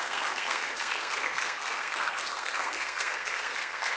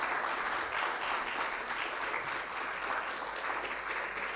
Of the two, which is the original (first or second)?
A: second